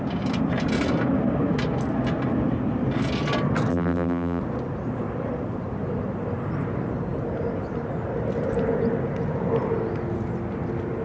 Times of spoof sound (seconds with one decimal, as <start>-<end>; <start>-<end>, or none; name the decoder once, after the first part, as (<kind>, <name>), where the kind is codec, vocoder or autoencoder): 3.7-4.4 (vocoder, BigVGAN v2)

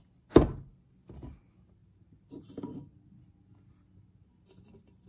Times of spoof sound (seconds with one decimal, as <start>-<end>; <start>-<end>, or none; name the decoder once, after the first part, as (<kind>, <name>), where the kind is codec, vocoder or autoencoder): 1.8-2.6 (vocoder, BigVGAN v2)

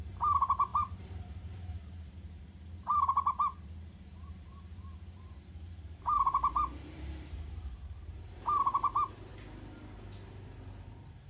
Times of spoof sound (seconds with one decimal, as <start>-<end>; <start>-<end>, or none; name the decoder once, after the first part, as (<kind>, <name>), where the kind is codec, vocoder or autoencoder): 0.0-9.3 (vocoder, BigVGAN v2); 10.9-11.3

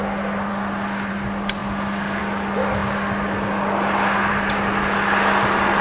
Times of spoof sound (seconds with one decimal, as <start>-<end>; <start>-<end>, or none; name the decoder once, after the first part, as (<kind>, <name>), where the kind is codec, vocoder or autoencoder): none

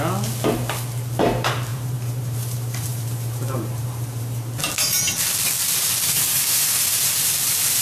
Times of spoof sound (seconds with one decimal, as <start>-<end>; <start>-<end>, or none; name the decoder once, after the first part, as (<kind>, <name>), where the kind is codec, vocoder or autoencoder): 1.7-4.6 (vocoder, BigVGAN v2)

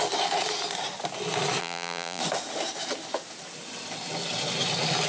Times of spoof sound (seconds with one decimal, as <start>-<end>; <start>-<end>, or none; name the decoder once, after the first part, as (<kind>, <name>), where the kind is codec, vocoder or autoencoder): 1.6-2.2 (vocoder, BigVGAN v2)